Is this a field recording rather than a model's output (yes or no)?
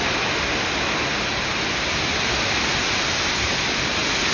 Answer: yes